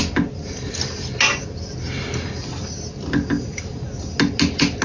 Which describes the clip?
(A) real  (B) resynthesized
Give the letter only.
A